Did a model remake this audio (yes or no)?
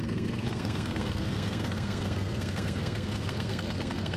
yes